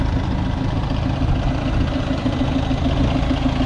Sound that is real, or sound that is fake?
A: real